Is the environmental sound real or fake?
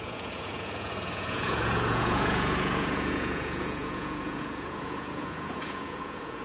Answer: fake